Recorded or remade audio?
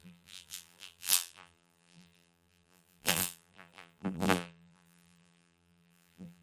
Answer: remade